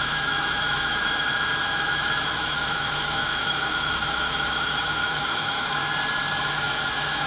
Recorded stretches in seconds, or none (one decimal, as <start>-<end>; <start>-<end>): 5.8-6.4